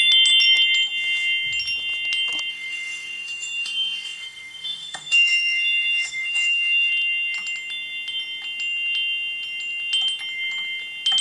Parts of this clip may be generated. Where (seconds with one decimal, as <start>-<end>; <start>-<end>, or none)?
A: 2.5-6.9